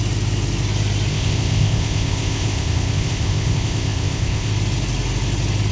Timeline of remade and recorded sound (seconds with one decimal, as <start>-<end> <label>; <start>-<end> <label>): 0.0-1.1 recorded; 1.1-4.5 remade; 4.5-5.7 recorded